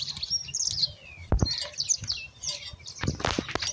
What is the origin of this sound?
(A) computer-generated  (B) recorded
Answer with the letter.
B